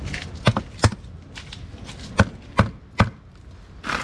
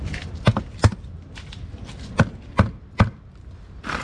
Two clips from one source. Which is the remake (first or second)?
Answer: second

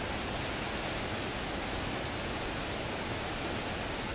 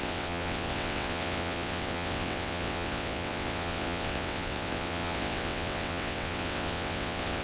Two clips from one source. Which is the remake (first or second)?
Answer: second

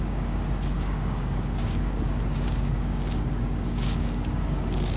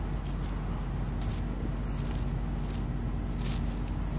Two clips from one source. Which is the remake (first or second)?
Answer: first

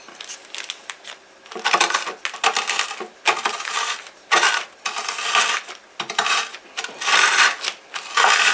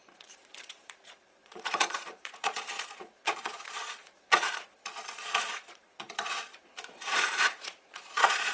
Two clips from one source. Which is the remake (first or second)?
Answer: second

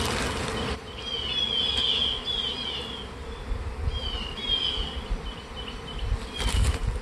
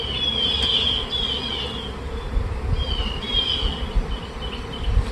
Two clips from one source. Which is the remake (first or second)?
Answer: second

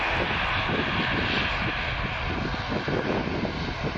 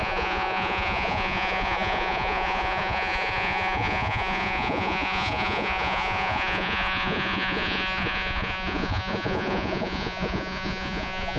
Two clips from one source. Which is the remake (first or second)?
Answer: second